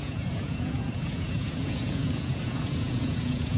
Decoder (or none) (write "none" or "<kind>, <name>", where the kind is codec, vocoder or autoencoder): vocoder, Vocos